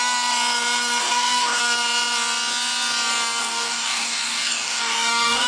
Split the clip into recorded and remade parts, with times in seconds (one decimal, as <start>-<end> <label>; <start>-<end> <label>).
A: 0.0-1.0 recorded; 1.0-1.6 remade; 1.6-3.4 recorded; 3.4-5.5 remade